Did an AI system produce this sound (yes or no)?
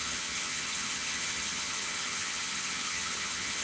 yes